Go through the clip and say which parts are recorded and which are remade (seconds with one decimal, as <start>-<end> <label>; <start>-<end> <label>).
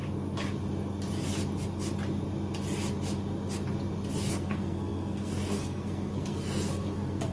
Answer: 0.0-4.3 recorded; 4.3-7.3 remade